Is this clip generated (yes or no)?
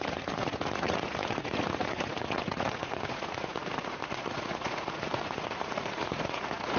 yes